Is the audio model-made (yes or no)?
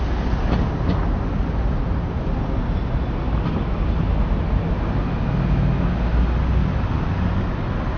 no